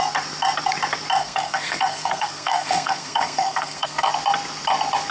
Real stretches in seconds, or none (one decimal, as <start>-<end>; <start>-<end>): 0.0-1.2; 4.1-5.1